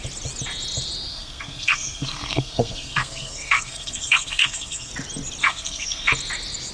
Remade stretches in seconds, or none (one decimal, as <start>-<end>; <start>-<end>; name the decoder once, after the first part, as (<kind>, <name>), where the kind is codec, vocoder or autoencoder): 1.1-4.9 (codec, SNAC); 5.4-6.1

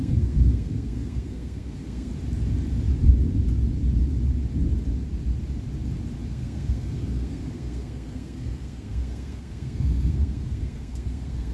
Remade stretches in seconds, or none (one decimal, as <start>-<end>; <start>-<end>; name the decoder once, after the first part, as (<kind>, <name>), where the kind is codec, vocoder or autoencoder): 0.0-2.1 (codec, SNAC); 6.3-11.5